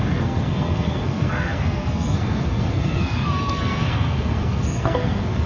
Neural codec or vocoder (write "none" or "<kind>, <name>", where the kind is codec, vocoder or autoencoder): codec, SNAC